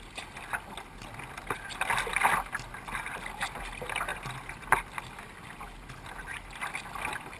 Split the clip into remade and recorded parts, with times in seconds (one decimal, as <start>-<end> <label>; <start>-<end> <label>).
0.0-7.4 recorded